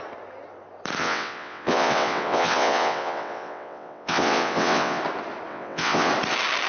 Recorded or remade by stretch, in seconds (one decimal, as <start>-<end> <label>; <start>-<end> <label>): 0.0-1.0 recorded; 1.0-5.0 remade; 5.0-5.5 recorded; 5.5-6.1 remade; 6.1-6.7 recorded